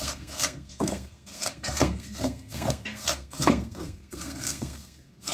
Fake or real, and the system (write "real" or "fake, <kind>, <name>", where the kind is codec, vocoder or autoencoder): fake, codec, SNAC